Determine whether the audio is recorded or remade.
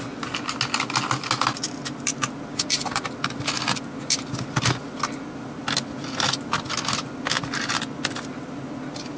recorded